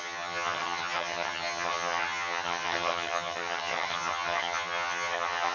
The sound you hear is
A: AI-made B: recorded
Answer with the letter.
A